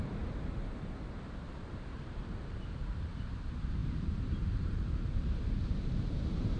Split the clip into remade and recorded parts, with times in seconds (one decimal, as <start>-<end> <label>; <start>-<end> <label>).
0.0-6.6 remade